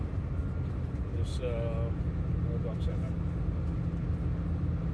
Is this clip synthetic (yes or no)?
no